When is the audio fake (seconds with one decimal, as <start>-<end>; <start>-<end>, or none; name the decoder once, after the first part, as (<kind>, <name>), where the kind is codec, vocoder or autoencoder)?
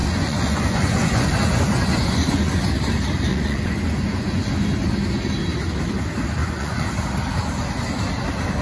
0.0-2.6 (vocoder, Vocos); 3.3-4.5; 6.4-6.9